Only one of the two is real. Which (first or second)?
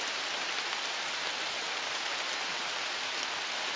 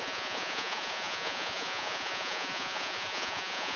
first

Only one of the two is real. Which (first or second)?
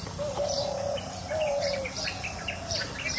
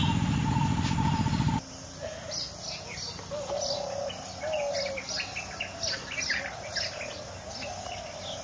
second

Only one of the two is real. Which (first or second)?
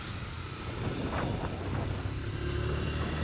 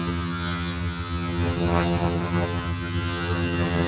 first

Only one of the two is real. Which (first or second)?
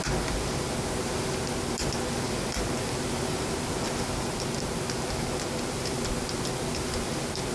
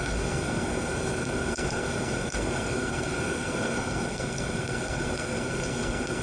first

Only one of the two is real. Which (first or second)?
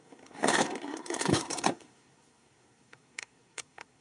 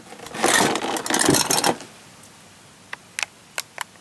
second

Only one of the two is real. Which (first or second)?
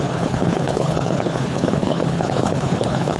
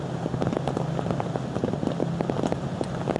second